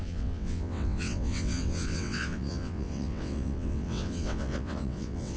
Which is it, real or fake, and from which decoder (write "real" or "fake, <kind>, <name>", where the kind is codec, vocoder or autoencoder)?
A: fake, vocoder, WaveNeXt